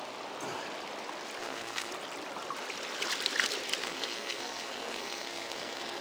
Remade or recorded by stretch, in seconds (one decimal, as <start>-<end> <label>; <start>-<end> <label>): 0.0-1.4 recorded; 1.4-1.9 remade; 1.9-3.8 recorded; 3.8-6.0 remade